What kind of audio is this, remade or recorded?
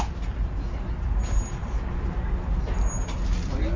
recorded